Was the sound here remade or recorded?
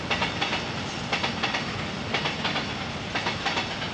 recorded